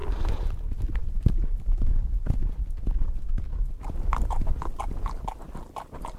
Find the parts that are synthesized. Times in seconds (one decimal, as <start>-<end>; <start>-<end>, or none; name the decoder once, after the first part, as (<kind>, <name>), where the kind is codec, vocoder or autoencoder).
none